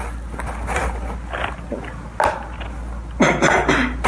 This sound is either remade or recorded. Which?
recorded